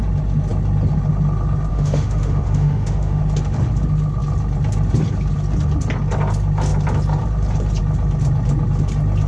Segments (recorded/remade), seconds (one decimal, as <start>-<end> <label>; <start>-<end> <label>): 0.0-1.7 recorded; 1.7-3.2 remade; 3.2-9.3 recorded